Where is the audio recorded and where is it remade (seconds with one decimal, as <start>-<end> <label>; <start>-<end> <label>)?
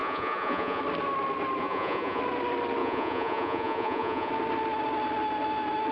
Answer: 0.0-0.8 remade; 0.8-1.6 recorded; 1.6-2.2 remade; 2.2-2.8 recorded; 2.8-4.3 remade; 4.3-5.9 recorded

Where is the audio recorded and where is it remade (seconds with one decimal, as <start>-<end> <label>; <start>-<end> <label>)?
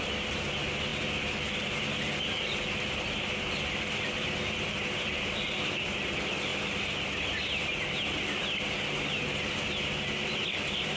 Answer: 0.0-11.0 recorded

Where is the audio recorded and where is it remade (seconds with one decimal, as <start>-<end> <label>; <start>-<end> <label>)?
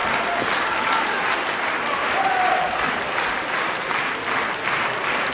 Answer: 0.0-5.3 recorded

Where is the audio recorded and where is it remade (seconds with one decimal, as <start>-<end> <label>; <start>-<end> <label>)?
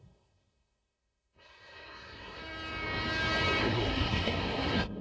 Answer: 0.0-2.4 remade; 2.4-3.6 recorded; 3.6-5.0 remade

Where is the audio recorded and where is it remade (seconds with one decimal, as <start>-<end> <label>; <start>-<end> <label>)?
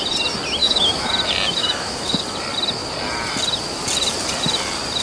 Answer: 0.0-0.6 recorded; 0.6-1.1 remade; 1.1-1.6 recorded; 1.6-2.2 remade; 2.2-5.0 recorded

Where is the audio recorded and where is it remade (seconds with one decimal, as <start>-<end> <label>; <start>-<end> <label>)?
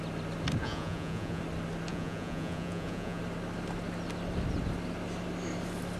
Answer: 0.0-0.6 recorded; 0.6-1.4 remade; 1.4-1.9 recorded; 1.9-3.2 remade; 3.2-6.0 recorded